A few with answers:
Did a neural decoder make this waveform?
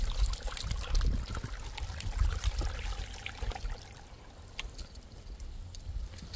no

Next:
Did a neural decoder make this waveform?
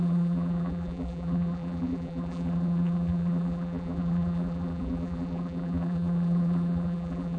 yes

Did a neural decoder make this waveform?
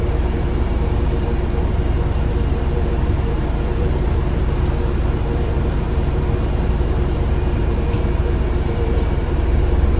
yes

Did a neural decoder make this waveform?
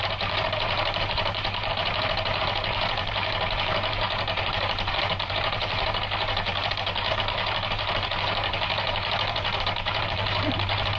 yes